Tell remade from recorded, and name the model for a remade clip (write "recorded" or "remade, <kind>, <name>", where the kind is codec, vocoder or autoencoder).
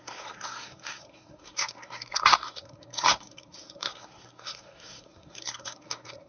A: remade, codec, SNAC